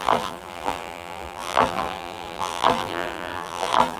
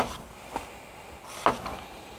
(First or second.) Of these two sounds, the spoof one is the first